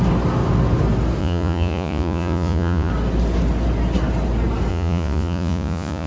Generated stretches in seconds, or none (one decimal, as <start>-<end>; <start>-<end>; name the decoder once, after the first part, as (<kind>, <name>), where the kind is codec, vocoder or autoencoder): 1.2-2.9 (vocoder, Vocos); 4.7-6.1